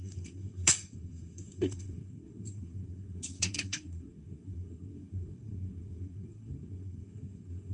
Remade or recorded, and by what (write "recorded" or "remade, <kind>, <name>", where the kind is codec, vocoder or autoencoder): remade, codec, SNAC